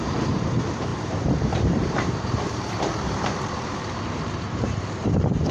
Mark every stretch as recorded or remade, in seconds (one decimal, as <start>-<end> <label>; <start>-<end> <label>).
0.0-5.5 remade